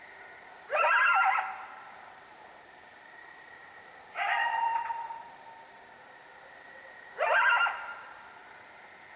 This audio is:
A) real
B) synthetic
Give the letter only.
A